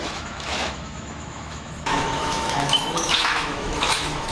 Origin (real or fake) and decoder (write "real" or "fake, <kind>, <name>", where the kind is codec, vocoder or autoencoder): fake, autoencoder, DAC-VAE